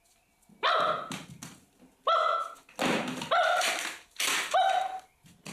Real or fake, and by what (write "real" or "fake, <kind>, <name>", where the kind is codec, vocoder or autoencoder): real